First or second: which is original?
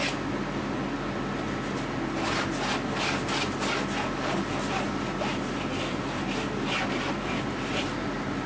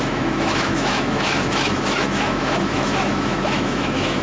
first